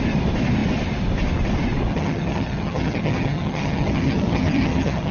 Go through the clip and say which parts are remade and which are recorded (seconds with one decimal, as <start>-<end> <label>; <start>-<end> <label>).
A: 0.0-1.9 recorded; 1.9-5.1 remade

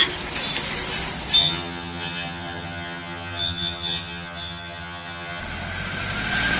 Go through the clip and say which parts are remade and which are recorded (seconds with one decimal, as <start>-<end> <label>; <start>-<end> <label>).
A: 0.0-1.4 recorded; 1.4-5.4 remade; 5.4-6.6 recorded

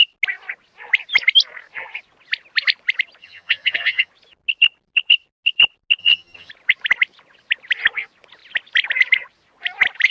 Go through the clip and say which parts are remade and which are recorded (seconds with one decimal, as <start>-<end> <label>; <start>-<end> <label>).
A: 0.0-3.2 recorded; 3.2-4.1 remade; 4.1-6.0 recorded; 6.0-6.5 remade; 6.5-10.1 recorded

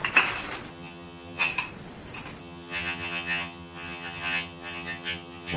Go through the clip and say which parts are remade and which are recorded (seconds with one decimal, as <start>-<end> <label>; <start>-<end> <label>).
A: 0.0-0.7 recorded; 0.7-1.5 remade; 1.5-2.4 recorded; 2.4-5.6 remade

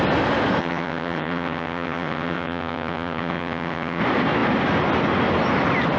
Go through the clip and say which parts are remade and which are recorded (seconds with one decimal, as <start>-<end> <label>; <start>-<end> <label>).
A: 0.0-0.6 recorded; 0.6-4.0 remade; 4.0-6.0 recorded

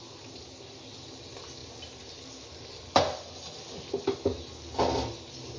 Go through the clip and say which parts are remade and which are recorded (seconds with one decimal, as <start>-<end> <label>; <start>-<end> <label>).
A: 0.0-5.6 recorded

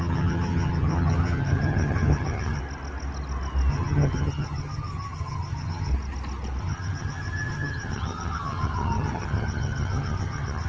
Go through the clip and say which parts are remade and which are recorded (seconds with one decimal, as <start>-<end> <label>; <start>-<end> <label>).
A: 0.0-2.6 remade; 2.6-3.7 recorded; 3.7-5.9 remade; 5.9-6.6 recorded; 6.6-10.7 remade